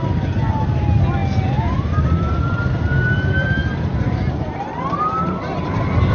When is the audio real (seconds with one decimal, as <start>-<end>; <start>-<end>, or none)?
0.0-6.1